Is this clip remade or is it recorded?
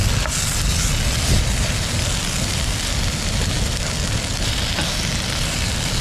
recorded